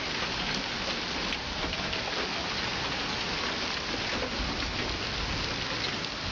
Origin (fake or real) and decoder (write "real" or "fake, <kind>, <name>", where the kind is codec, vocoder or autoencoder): real